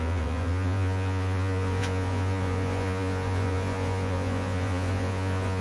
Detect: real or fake fake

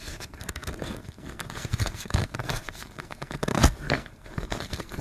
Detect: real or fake fake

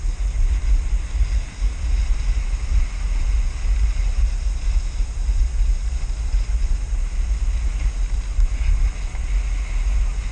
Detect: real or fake real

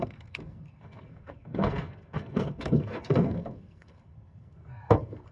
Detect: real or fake fake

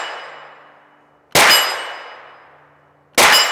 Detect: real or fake real